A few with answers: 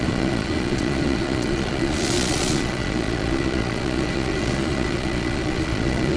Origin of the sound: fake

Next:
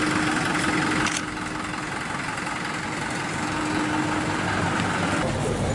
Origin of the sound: real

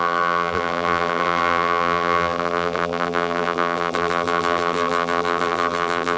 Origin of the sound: fake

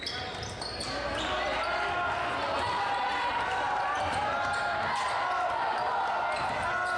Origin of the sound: real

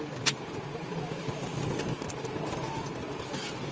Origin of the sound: real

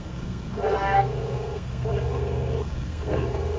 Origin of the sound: fake